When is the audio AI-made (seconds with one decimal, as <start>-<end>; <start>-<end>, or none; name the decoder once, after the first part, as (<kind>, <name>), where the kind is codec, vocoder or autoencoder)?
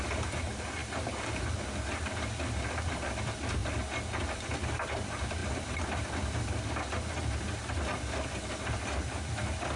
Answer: none